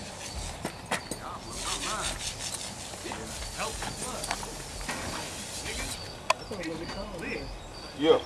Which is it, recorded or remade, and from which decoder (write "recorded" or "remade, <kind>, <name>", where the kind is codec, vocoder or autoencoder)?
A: recorded